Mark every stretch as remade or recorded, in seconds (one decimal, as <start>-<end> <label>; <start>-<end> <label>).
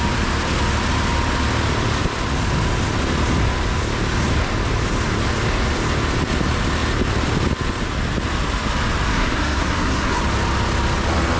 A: 0.0-9.1 recorded; 9.1-10.2 remade; 10.2-11.4 recorded